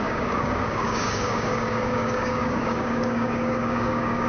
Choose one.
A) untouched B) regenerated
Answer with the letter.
B